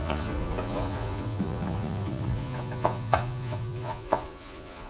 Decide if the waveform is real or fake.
fake